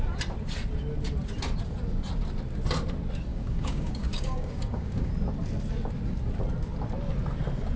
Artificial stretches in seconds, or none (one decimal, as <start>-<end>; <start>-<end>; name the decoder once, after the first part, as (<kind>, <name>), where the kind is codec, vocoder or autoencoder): 3.3-5.1 (codec, DAC)